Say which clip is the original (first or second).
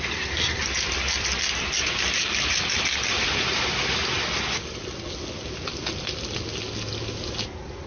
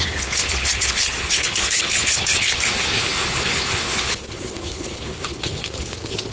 first